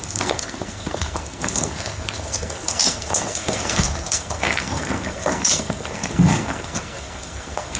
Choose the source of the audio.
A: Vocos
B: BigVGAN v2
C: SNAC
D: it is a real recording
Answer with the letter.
C